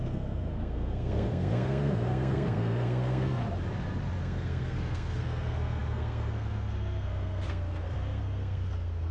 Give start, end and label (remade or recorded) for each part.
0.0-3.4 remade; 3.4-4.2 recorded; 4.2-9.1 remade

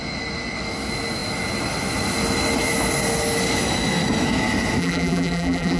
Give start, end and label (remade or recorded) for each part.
0.0-4.8 recorded; 4.8-5.8 remade

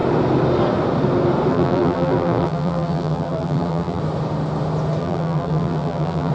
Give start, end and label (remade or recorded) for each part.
0.0-1.5 recorded; 1.5-4.0 remade; 4.0-5.0 recorded; 5.0-6.3 remade

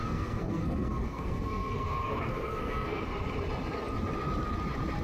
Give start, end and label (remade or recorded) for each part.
0.0-3.0 remade; 3.0-5.0 recorded